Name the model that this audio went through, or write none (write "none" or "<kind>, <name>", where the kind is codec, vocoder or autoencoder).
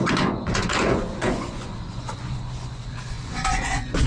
vocoder, Vocos